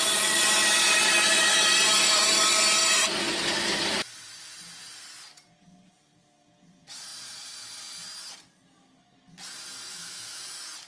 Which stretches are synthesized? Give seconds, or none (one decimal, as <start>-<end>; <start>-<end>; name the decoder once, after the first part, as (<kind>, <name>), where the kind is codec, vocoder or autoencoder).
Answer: 9.9-10.4 (autoencoder, DAC-VAE)

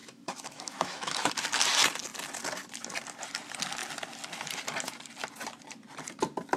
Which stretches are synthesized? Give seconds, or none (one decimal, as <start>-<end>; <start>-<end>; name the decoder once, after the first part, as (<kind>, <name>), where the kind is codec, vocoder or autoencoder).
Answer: 0.0-1.3 (autoencoder, DAC-VAE)

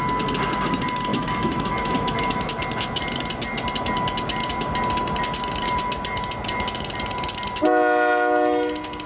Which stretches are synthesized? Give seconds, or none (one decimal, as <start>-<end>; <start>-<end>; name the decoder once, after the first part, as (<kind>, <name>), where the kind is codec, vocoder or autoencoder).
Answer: 1.1-2.6 (autoencoder, DAC-VAE)

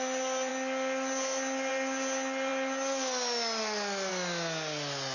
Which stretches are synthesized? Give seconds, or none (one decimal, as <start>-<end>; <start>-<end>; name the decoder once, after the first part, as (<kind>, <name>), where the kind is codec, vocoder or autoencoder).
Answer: none

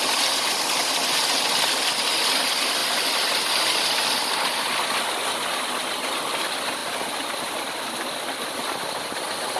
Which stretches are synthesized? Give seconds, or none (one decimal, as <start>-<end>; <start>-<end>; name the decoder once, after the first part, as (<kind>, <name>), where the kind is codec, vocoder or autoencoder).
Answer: none

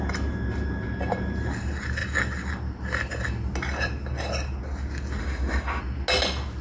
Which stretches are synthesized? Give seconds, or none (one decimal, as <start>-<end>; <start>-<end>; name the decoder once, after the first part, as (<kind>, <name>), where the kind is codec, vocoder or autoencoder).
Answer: 5.2-5.8 (autoencoder, DAC-VAE)

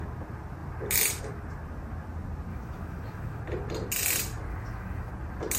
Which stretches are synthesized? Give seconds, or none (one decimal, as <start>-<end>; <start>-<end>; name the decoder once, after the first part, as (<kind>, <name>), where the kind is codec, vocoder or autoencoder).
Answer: 2.5-3.4 (autoencoder, DAC-VAE); 4.5-5.1